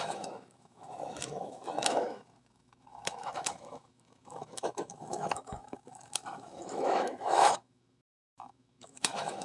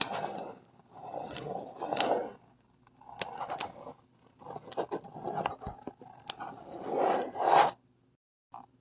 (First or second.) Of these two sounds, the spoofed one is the first